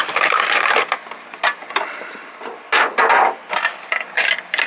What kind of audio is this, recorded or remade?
recorded